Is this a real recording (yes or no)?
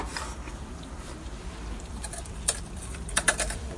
no